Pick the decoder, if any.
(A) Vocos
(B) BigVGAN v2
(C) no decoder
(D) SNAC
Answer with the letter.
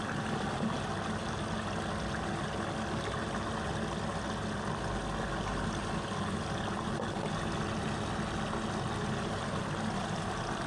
C